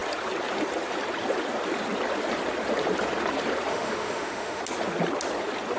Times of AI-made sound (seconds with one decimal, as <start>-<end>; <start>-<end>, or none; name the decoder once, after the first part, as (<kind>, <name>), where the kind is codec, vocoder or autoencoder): 3.7-4.6 (autoencoder, DAC-VAE)